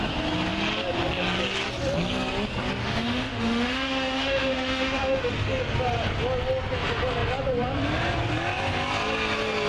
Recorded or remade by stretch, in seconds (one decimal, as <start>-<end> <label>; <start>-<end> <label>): 0.0-2.8 recorded; 2.8-5.6 remade; 5.6-9.7 recorded